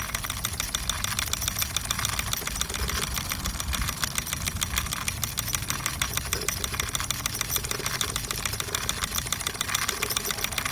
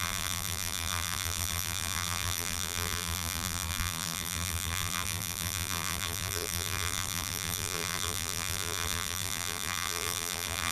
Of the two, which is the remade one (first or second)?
second